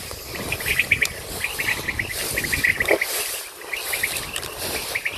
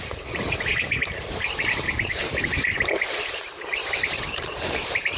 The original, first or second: first